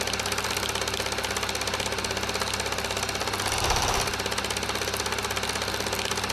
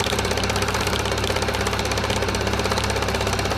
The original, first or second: first